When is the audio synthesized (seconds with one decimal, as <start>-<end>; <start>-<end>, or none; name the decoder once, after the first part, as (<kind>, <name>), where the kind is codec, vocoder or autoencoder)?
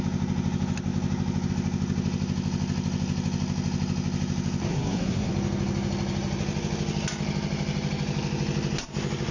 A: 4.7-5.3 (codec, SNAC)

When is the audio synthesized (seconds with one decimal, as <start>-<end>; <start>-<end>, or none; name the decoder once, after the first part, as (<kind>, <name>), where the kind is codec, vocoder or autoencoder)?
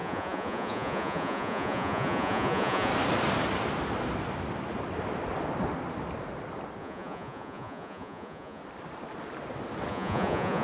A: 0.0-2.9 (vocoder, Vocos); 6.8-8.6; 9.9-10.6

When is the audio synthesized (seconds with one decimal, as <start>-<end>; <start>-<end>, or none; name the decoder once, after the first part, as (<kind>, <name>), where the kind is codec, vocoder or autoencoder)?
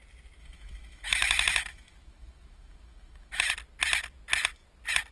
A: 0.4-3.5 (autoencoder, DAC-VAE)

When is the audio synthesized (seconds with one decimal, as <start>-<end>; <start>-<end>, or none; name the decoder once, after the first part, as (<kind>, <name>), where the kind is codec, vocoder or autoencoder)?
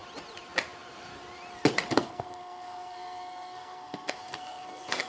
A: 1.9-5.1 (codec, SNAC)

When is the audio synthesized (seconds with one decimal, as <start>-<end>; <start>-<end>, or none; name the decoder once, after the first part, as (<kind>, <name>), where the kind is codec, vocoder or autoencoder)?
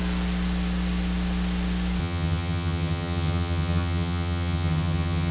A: 2.0-5.3 (vocoder, HiFi-GAN)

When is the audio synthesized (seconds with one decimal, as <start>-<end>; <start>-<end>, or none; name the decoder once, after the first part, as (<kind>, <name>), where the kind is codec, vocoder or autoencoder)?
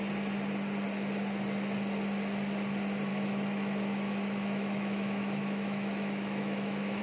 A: 3.1-7.0 (autoencoder, DAC-VAE)